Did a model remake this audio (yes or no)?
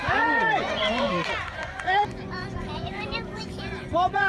yes